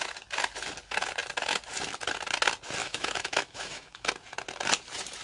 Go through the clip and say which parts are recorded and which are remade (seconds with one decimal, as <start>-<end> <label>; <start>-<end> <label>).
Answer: 0.0-2.8 recorded; 2.8-4.1 remade; 4.1-5.2 recorded